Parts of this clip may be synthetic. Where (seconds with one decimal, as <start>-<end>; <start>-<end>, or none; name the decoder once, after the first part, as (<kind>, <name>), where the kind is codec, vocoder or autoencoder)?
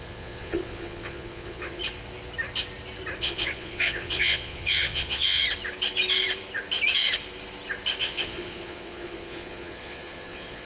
0.0-1.8 (vocoder, Vocos); 3.2-5.4; 8.0-10.7